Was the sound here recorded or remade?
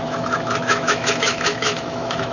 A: remade